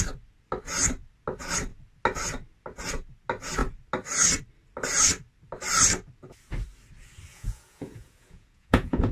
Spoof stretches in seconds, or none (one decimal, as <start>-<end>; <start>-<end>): 7.3-9.1